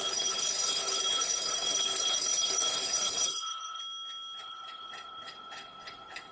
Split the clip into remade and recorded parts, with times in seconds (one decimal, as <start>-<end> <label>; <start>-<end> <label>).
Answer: 0.0-3.8 remade; 3.8-4.4 recorded; 4.4-6.3 remade